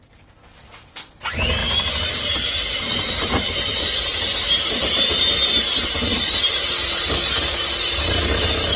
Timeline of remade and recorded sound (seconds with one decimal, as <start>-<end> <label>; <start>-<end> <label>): 0.0-1.6 recorded; 1.6-3.6 remade; 3.6-4.1 recorded; 4.1-4.6 remade; 4.6-6.1 recorded; 6.1-6.9 remade; 6.9-8.8 recorded